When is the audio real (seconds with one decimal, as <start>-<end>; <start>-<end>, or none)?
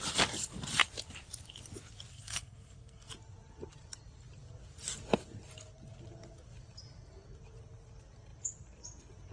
0.0-2.1; 3.1-9.3